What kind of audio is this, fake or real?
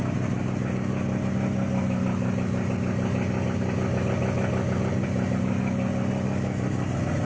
real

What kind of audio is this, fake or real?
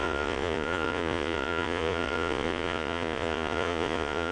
fake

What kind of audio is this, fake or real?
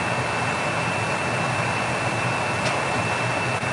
real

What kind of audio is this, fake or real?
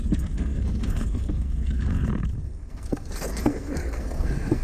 fake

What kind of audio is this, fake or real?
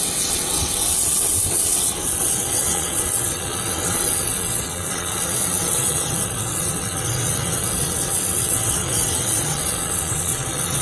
fake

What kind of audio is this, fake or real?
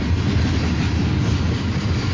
real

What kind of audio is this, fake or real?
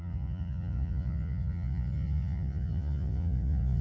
fake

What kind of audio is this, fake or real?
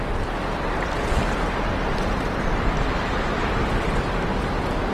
fake